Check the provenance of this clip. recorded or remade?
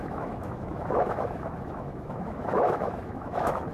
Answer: remade